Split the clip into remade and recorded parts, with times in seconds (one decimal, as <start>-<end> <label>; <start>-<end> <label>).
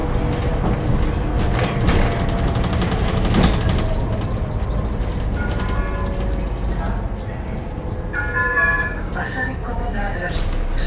0.0-8.4 recorded; 8.4-10.9 remade